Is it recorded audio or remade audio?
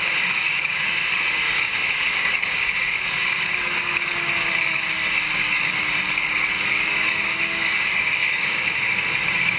remade